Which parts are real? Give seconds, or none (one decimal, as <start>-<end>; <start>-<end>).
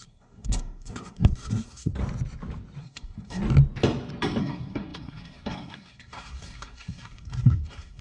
1.9-2.8; 3.4-4.4